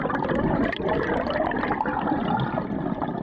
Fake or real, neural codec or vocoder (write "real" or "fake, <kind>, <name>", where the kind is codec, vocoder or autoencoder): real